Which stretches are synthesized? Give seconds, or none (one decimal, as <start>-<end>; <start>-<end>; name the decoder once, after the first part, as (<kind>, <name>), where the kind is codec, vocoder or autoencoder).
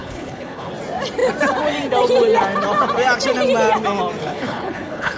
0.0-0.7 (codec, HILCodec); 4.2-5.2